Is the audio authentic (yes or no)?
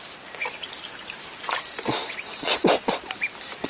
yes